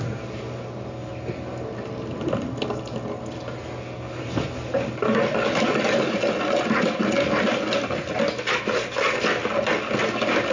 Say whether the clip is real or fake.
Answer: real